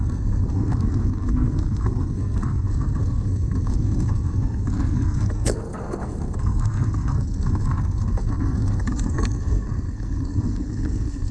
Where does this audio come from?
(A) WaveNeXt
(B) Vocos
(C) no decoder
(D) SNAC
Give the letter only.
D